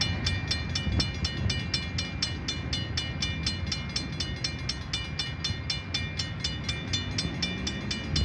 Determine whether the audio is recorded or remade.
recorded